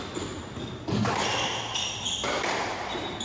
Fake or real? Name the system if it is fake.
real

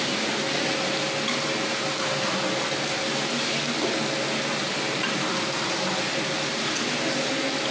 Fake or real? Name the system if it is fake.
real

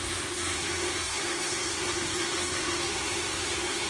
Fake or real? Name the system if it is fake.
fake, codec, SNAC